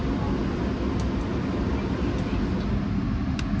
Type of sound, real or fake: real